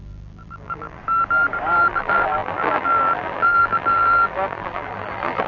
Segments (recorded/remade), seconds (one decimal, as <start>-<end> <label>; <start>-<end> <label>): 0.0-1.0 remade; 1.0-1.9 recorded; 1.9-5.5 remade